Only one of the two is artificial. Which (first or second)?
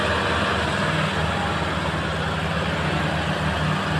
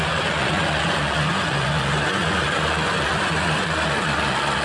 second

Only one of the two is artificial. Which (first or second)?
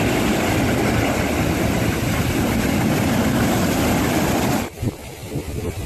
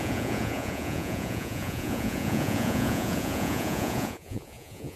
second